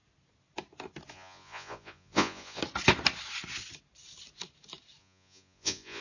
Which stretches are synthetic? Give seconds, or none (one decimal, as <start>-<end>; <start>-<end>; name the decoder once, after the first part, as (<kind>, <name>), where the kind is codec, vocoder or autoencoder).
1.1-2.6 (vocoder, Vocos); 5.0-6.0